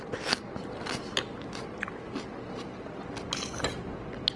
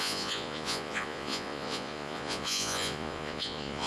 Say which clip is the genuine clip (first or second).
first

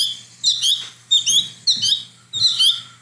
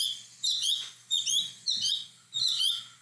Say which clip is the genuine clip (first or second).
first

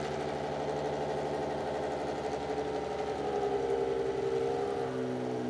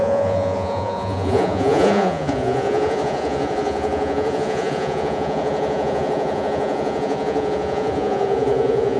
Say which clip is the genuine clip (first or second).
first